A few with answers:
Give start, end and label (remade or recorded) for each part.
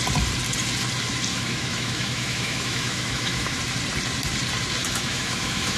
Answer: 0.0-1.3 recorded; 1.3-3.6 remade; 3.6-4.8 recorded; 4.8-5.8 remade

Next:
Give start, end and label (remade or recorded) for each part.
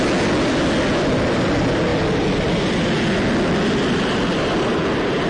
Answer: 0.0-5.3 recorded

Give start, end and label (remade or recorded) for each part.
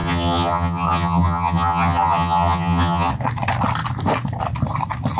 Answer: 0.0-3.1 remade; 3.1-5.2 recorded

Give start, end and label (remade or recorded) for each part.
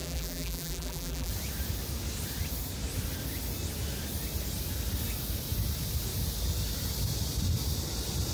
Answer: 0.0-1.3 remade; 1.3-8.3 recorded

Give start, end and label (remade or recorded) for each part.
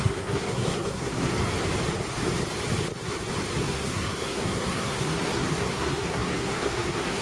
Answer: 0.0-1.3 remade; 1.3-3.6 recorded; 3.6-7.2 remade